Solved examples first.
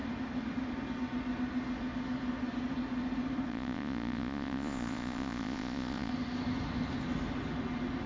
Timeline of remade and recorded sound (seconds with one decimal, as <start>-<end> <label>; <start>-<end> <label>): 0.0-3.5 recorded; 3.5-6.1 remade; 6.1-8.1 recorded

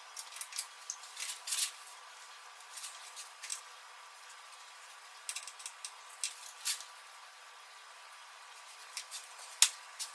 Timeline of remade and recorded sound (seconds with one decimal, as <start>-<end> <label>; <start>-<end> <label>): 0.0-10.1 recorded

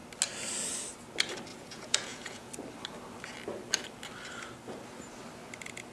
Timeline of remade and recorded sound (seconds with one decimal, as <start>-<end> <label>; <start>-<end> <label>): 0.0-1.5 recorded; 1.5-2.5 remade; 2.5-5.9 recorded